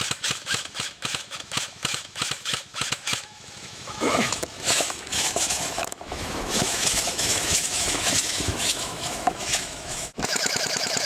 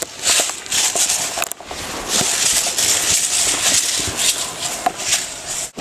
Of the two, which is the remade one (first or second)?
first